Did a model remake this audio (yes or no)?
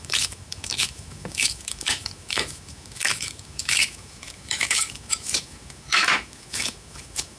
yes